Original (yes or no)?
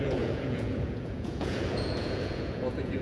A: no